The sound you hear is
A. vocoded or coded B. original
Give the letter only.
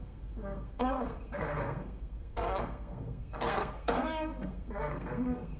A